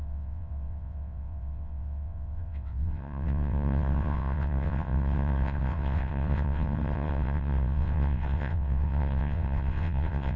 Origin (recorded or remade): remade